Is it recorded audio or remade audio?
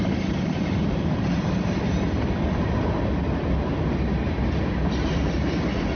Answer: remade